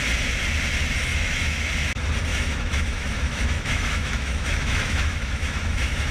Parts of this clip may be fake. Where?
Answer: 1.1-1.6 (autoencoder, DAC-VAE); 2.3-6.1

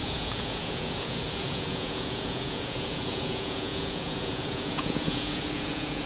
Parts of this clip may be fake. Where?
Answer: 0.0-6.1 (vocoder, Vocos)